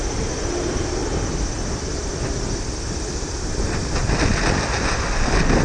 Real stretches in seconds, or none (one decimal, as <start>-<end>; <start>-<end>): 0.0-5.6